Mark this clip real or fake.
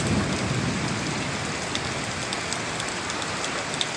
real